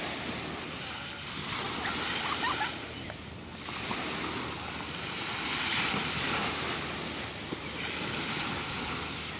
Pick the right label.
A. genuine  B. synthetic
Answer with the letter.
A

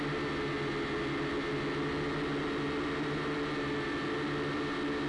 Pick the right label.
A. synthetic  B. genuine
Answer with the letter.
B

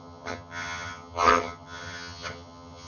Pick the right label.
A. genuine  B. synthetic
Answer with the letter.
B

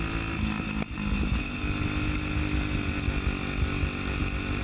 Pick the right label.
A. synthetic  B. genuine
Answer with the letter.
B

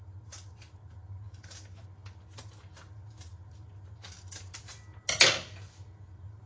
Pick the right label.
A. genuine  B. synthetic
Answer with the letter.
A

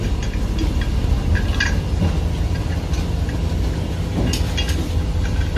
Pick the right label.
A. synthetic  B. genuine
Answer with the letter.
B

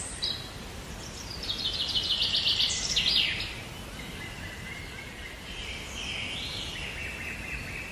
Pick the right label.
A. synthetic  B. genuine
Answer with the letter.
B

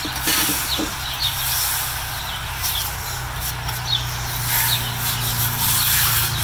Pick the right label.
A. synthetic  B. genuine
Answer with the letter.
B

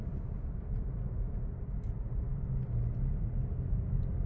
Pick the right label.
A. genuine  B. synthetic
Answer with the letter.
A